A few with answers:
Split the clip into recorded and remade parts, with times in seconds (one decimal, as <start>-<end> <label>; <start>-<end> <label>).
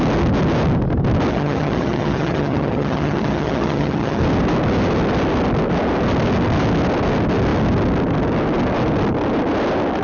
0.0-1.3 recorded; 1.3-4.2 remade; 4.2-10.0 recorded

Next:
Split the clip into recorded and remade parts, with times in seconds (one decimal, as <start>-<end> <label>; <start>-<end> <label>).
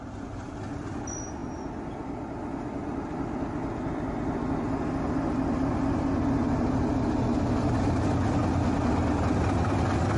0.0-10.2 recorded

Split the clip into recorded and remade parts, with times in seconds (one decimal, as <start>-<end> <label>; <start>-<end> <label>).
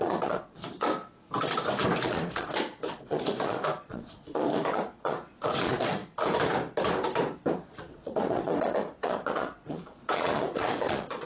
0.0-0.9 remade; 0.9-2.0 recorded; 2.0-6.0 remade; 6.0-7.5 recorded; 7.5-11.3 remade